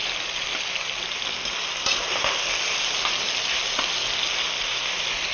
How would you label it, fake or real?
real